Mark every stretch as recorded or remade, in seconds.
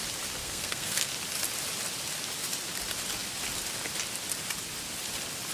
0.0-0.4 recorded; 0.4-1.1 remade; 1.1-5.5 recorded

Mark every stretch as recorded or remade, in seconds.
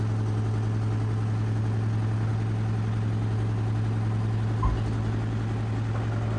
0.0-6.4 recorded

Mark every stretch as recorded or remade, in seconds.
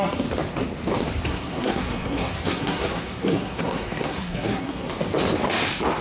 0.0-1.3 recorded; 1.3-4.9 remade; 4.9-6.0 recorded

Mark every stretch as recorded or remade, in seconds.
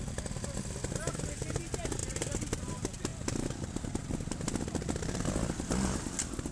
0.0-6.5 recorded